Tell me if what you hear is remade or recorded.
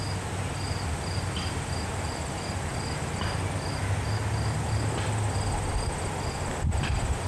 recorded